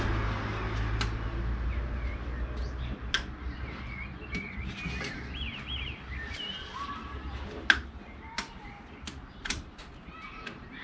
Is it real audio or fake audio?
real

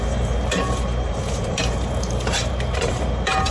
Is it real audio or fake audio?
fake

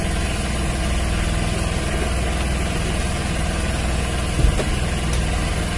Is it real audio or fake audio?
real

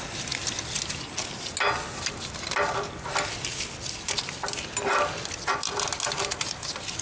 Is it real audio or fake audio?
real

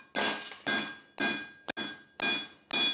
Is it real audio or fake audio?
real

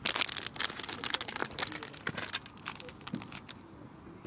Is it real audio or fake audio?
real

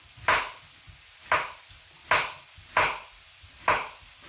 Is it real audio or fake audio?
real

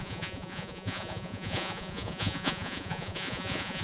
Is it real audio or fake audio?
fake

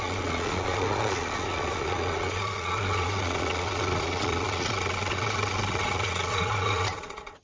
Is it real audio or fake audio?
fake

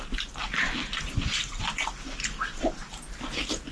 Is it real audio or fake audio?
real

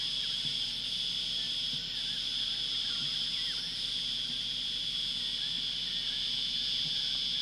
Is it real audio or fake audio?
real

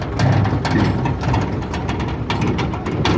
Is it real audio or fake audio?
real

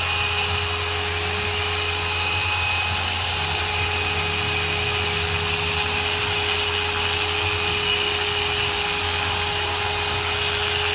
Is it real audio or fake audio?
real